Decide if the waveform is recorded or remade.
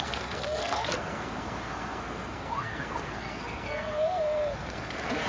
remade